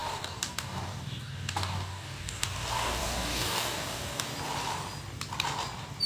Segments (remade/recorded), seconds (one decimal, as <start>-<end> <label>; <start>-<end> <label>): 0.0-4.3 remade; 4.3-6.1 recorded

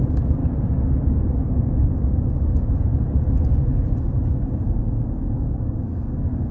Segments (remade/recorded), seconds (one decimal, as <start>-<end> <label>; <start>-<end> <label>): 0.0-0.4 remade; 0.4-4.3 recorded; 4.3-6.5 remade

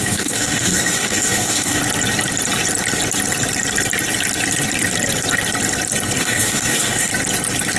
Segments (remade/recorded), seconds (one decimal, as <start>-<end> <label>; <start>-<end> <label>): 0.0-1.8 remade; 1.8-6.2 recorded; 6.2-7.1 remade; 7.1-7.8 recorded

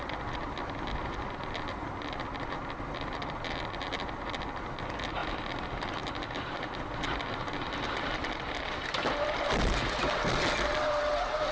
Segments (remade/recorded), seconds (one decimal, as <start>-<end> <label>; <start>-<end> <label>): 0.0-11.5 recorded

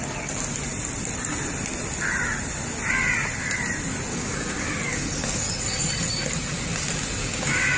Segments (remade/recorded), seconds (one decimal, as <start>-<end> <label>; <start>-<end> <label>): 0.0-4.1 recorded; 4.1-4.6 remade; 4.6-7.2 recorded; 7.2-7.8 remade

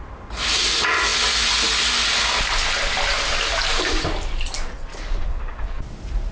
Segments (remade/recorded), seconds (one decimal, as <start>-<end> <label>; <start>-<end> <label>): 0.0-4.9 recorded; 4.9-5.8 remade; 5.8-6.3 recorded

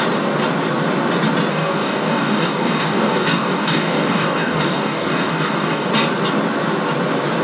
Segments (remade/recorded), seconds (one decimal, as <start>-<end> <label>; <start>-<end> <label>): 0.0-1.5 recorded; 1.5-5.9 remade; 5.9-7.4 recorded

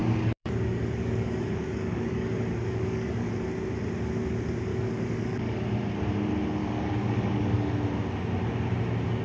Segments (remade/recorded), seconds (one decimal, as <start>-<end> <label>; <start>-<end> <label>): 0.0-3.3 remade; 3.3-4.7 recorded; 4.7-5.6 remade; 5.6-6.6 recorded; 6.6-7.7 remade; 7.7-9.2 recorded